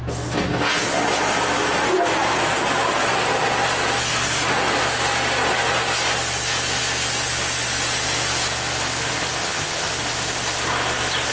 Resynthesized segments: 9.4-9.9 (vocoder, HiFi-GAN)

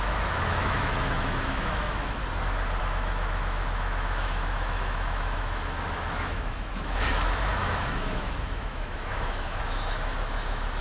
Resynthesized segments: 0.0-2.2 (autoencoder, DAC-VAE); 2.8-10.8

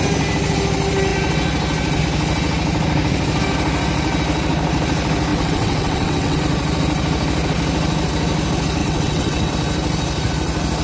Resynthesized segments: 5.3-6.4 (vocoder, WaveNeXt); 8.8-9.5

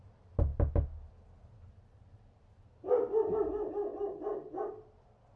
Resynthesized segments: none

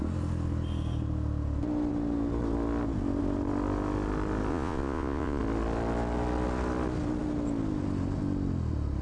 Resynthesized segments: 4.5-5.4 (vocoder, Vocos)

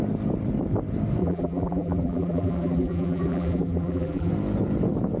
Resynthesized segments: 1.2-4.3 (vocoder, BigVGAN v2)